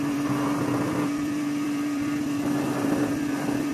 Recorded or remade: remade